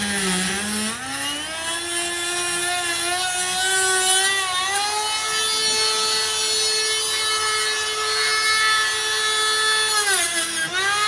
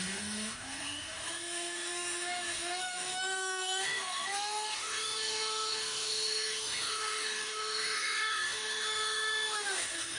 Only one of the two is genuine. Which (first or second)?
first